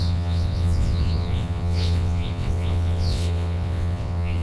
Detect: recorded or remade remade